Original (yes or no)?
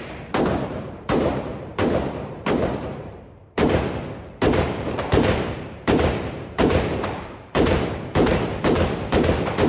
no